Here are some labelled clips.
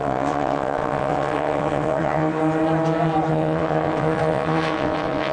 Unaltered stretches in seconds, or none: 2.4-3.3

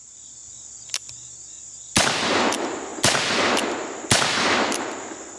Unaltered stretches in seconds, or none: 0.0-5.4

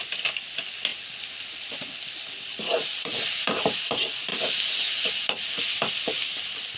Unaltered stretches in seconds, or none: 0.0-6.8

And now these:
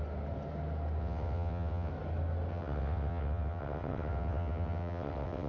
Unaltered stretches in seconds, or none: 0.0-1.0; 1.9-2.5

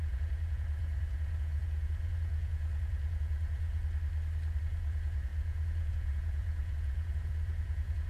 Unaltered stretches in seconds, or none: 3.8-4.6